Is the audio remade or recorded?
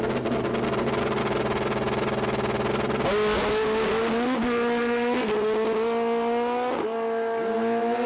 recorded